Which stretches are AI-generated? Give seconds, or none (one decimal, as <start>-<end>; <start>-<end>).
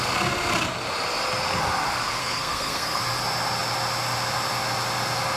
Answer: 2.2-3.0